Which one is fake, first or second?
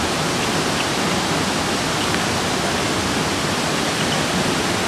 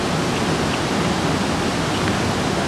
first